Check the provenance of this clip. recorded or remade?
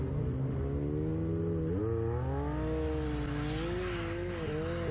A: recorded